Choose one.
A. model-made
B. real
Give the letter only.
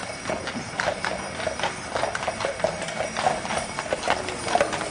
B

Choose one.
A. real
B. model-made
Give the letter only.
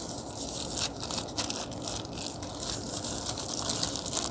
A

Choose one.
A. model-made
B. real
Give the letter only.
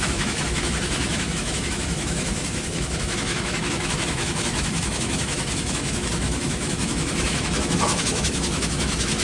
A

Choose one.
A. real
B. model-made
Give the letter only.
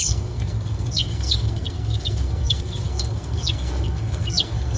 B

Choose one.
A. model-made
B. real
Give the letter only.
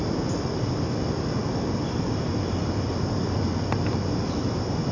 B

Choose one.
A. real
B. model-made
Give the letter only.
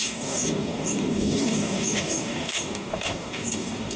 B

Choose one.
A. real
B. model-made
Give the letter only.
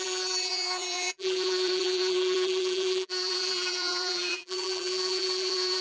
B